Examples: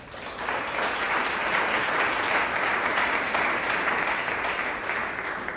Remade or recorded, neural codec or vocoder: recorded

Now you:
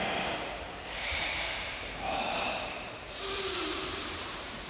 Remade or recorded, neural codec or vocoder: remade, vocoder, BigVGAN v2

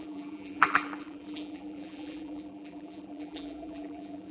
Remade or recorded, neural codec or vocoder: remade, vocoder, BigVGAN v2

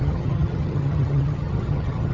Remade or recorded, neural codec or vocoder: remade, vocoder, HiFi-GAN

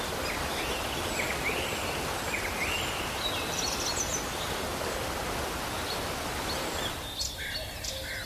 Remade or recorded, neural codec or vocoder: recorded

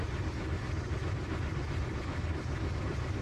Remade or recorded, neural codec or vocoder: recorded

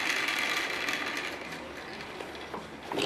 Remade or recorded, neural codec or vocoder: recorded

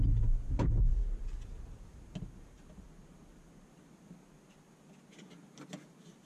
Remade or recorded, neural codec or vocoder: recorded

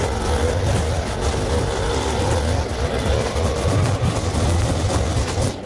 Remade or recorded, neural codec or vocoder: recorded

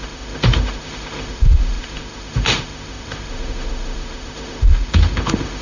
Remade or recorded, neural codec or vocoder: remade, autoencoder, DAC-VAE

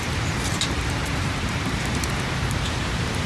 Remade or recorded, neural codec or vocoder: remade, vocoder, BigVGAN v2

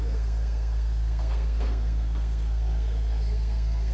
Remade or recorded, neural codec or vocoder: remade, codec, SNAC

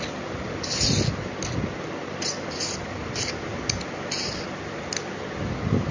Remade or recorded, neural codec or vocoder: recorded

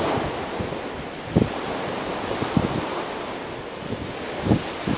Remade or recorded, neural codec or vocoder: recorded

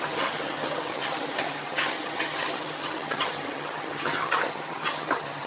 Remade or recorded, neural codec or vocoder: remade, vocoder, HiFi-GAN